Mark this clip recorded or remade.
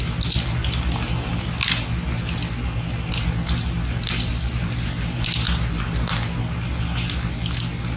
recorded